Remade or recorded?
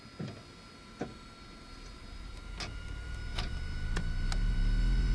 recorded